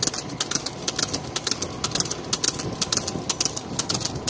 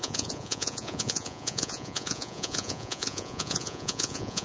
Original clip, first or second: first